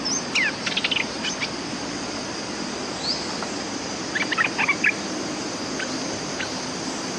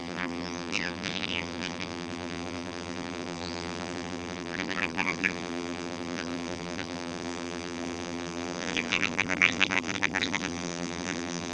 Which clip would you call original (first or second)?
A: first